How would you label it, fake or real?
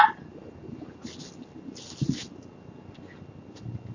real